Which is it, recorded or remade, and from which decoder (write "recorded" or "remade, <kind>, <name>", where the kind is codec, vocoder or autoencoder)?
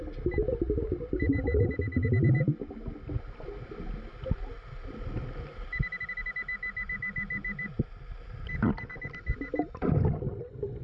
recorded